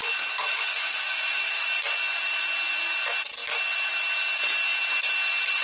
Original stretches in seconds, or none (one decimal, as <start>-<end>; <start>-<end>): 1.8-5.6